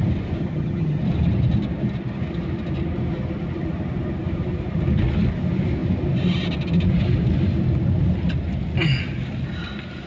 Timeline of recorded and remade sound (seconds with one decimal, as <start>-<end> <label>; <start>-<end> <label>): 0.0-0.4 recorded; 0.4-1.0 remade; 1.0-10.1 recorded